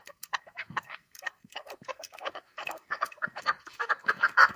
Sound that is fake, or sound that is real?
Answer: fake